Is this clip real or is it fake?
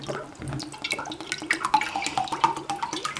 real